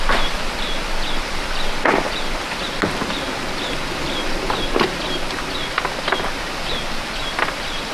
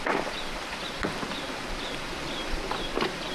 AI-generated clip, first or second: second